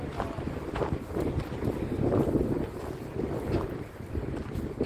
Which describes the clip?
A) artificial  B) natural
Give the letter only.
B